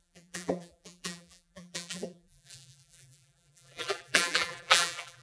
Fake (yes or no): yes